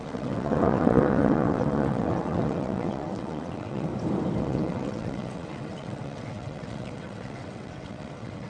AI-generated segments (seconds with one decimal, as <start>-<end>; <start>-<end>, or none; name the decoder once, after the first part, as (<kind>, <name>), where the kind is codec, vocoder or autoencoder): 0.0-3.9 (vocoder, WaveNeXt); 4.4-8.5

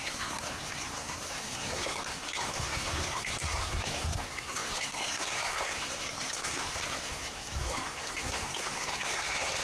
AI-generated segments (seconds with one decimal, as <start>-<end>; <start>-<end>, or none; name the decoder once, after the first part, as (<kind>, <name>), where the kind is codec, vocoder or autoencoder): 0.0-9.6 (codec, SNAC)

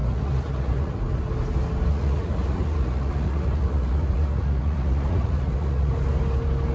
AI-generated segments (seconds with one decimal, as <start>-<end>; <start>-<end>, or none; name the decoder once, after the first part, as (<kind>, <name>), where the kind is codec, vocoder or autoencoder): 0.0-1.0 (vocoder, Vocos); 1.9-5.9